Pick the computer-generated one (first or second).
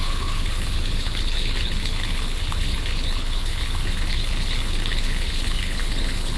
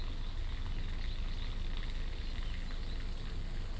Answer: first